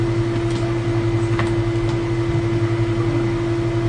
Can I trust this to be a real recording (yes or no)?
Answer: yes